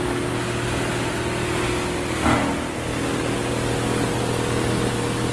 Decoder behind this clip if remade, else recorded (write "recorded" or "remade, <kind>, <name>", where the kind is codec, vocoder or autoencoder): recorded